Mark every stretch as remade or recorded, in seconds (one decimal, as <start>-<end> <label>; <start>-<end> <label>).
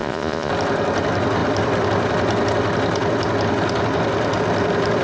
0.0-0.5 remade; 0.5-5.0 recorded